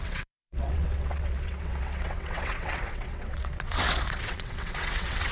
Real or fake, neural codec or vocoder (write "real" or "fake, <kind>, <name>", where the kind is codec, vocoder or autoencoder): fake, vocoder, WaveNeXt